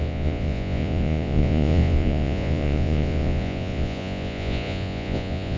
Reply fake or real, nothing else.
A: fake